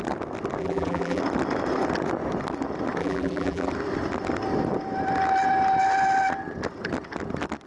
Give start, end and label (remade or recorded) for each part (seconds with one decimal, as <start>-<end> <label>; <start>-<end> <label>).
0.0-0.6 recorded; 0.6-1.2 remade; 1.2-3.0 recorded; 3.0-3.7 remade; 3.7-7.7 recorded